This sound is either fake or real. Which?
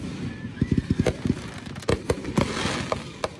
real